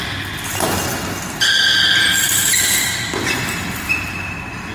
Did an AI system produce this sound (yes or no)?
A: no